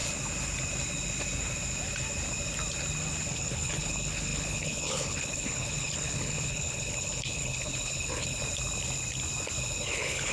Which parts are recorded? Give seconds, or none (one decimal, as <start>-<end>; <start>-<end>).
0.0-3.3; 8.4-9.6